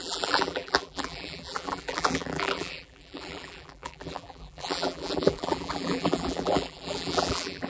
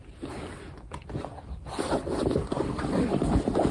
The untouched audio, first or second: second